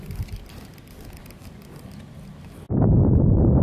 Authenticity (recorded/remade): recorded